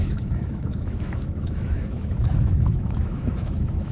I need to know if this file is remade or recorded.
remade